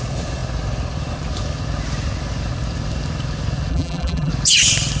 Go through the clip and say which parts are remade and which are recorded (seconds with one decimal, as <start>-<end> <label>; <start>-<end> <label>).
0.0-3.7 recorded; 3.7-4.3 remade; 4.3-5.0 recorded

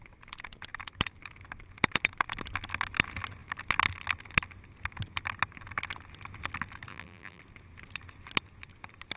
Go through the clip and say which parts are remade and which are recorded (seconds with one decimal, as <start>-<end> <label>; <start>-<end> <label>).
0.0-6.9 recorded; 6.9-7.4 remade; 7.4-9.2 recorded

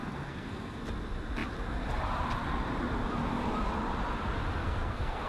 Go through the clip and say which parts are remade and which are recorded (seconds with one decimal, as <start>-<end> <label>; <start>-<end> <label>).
0.0-0.8 remade; 0.8-4.6 recorded; 4.6-5.3 remade

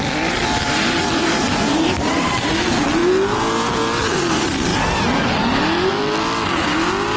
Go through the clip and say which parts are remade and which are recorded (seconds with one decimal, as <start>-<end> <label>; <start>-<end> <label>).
0.0-1.7 recorded; 1.7-2.3 remade; 2.3-7.2 recorded

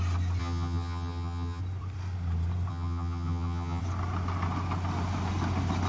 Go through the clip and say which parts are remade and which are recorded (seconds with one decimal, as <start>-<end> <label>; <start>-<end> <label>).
0.0-0.4 recorded; 0.4-1.6 remade; 1.6-2.7 recorded; 2.7-3.8 remade; 3.8-5.9 recorded